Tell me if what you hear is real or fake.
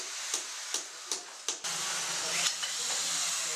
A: real